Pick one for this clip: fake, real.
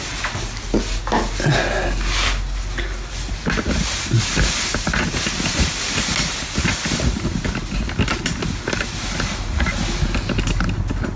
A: real